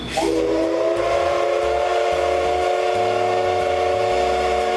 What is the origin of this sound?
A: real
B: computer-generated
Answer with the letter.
A